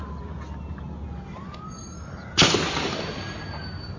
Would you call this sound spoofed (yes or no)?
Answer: no